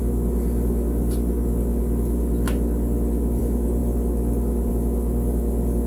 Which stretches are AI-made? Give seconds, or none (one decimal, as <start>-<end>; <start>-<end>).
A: none